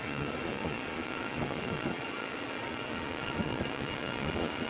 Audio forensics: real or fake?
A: fake